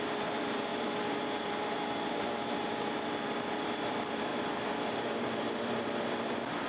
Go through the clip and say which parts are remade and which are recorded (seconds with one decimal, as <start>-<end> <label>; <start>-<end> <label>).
0.0-6.7 remade